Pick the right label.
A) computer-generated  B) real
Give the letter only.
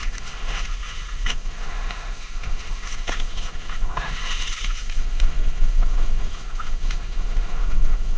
A